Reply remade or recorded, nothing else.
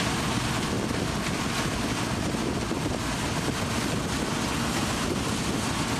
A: recorded